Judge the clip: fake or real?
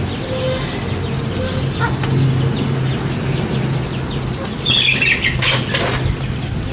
real